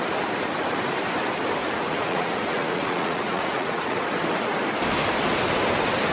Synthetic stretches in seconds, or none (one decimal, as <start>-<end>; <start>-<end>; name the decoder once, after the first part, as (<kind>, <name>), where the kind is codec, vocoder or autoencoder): 1.6-4.0 (vocoder, Vocos)